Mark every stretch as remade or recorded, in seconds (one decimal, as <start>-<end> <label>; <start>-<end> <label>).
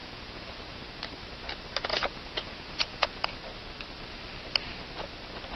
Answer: 0.0-0.8 remade; 0.8-1.9 recorded; 1.9-3.3 remade; 3.3-5.6 recorded